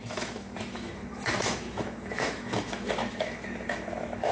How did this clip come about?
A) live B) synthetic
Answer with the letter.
B